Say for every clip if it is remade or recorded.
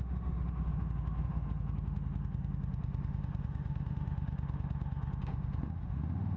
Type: remade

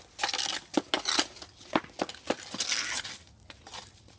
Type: recorded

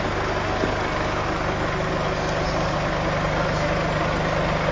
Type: recorded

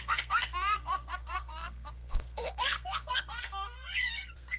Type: remade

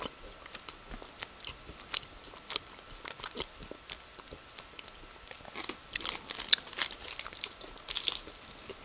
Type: recorded